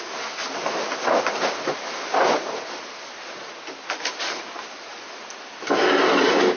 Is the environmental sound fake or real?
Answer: real